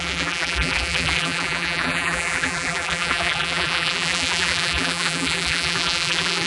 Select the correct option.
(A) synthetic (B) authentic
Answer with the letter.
A